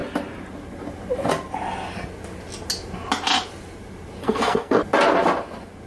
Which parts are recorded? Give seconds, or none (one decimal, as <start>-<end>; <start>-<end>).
0.0-4.2; 4.8-5.9